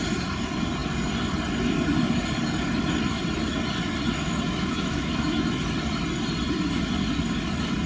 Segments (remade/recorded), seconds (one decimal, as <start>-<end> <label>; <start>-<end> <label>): 0.0-4.2 recorded; 4.2-5.6 remade; 5.6-7.9 recorded